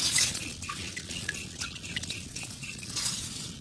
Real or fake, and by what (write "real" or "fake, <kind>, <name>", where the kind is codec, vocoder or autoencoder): fake, vocoder, Vocos